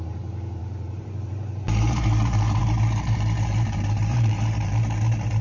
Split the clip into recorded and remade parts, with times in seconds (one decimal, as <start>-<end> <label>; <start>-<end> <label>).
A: 0.0-5.4 remade